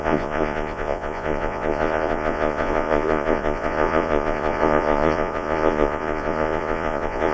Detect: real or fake fake